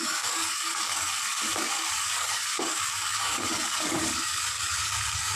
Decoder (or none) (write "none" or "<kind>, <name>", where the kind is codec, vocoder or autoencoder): codec, DAC